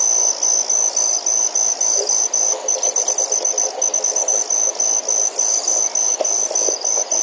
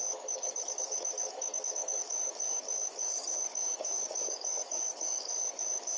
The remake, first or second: second